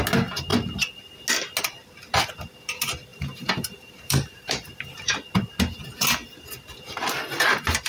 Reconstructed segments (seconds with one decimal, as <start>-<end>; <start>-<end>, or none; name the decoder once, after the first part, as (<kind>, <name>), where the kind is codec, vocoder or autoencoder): 3.1-5.1 (vocoder, BigVGAN v2)

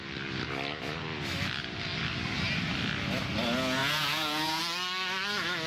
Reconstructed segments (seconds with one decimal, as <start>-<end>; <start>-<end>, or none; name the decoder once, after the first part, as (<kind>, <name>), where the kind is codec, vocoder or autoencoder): 3.8-4.6 (vocoder, Vocos)

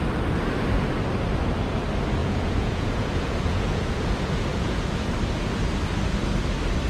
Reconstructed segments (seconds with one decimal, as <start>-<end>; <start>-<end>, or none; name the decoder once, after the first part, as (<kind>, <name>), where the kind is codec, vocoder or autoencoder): 2.2-4.0 (vocoder, Vocos); 4.5-5.1

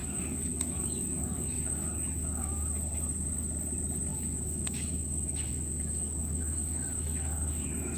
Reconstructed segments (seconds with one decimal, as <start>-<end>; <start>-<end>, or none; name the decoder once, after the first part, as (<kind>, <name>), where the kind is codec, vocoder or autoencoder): 0.0-2.7 (codec, DAC); 4.1-8.0

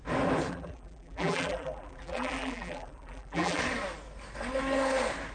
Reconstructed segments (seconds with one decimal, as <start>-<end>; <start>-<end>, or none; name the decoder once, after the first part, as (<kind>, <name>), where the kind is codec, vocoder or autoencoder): 0.5-3.6 (vocoder, BigVGAN v2)